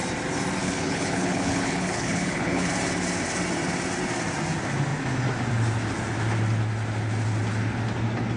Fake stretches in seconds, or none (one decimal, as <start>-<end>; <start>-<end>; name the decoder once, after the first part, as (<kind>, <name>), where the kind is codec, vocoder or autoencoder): 0.6-2.7 (codec, HILCodec)